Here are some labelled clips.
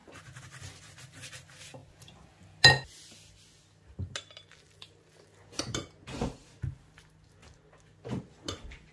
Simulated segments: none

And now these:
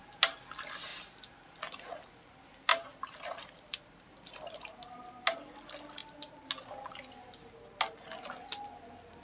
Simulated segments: 2.7-5.1 (vocoder, BigVGAN v2)